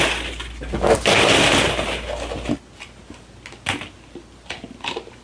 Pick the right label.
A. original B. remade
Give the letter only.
A